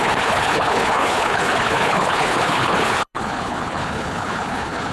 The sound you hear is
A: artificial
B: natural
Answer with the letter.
A